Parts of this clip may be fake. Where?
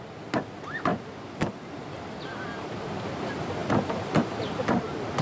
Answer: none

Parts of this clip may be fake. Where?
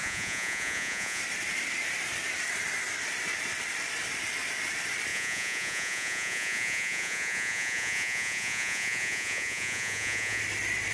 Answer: 0.0-1.2 (vocoder, Vocos); 5.1-10.4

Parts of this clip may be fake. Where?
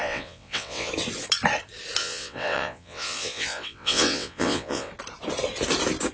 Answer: 0.0-0.9 (vocoder, WaveNeXt); 2.0-4.9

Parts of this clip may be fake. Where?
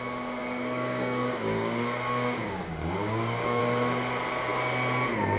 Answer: 0.4-3.6 (codec, DAC)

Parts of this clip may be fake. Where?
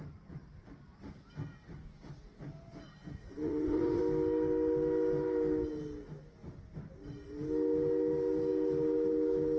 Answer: 3.2-4.0 (vocoder, WaveNeXt)